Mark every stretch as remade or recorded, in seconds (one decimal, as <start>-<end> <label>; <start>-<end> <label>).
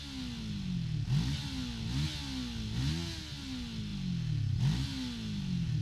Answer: 0.0-5.8 recorded